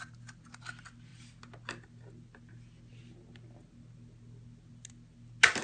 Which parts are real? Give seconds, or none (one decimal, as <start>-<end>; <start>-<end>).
0.0-5.6